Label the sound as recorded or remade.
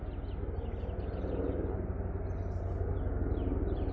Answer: recorded